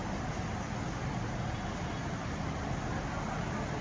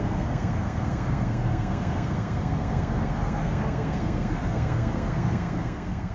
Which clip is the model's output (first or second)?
second